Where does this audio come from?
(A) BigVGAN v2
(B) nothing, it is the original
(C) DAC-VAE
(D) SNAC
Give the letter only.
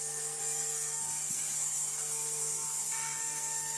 D